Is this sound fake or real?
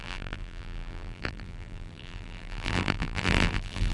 fake